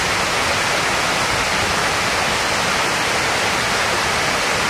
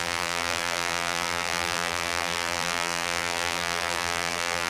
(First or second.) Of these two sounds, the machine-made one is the second